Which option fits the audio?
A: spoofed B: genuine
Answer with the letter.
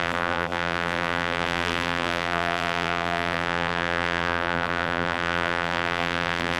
A